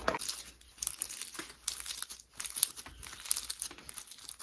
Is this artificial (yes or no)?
no